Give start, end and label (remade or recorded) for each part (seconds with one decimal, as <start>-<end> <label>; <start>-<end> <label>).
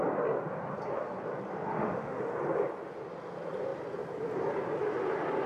0.0-1.7 recorded; 1.7-2.2 remade; 2.2-5.5 recorded